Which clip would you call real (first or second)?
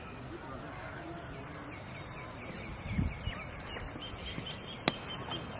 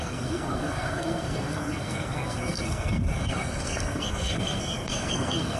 first